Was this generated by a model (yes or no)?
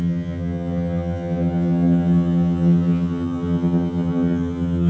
yes